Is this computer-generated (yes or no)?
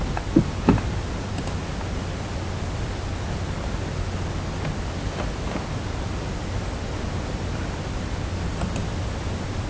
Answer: no